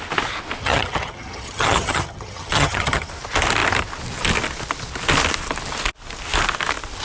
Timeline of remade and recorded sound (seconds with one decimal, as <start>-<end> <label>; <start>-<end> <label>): 0.0-0.6 recorded; 0.6-3.1 remade; 3.1-7.0 recorded